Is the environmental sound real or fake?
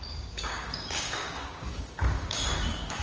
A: fake